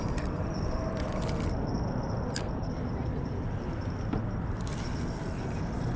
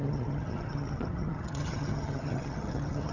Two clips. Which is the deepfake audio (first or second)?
second